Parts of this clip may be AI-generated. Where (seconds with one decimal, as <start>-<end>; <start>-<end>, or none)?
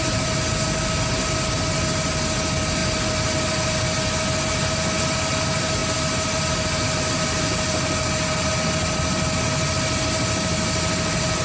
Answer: none